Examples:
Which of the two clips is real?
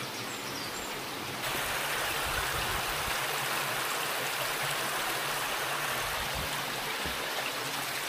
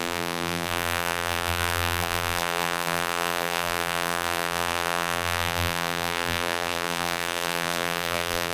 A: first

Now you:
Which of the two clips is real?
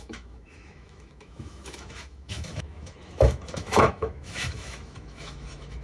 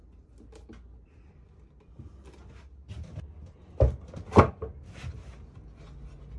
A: second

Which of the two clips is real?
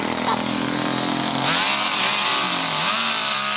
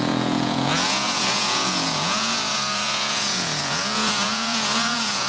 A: first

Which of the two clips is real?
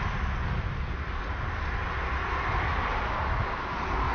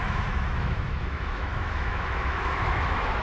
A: first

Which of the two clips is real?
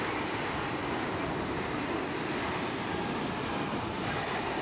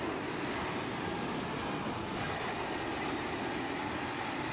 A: second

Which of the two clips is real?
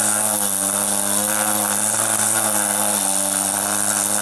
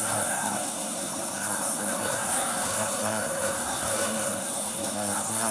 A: first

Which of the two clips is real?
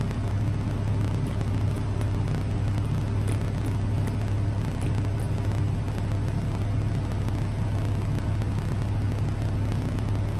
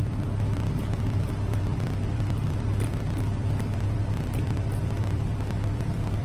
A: first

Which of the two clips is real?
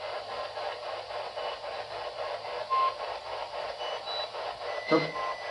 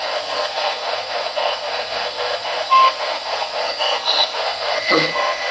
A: first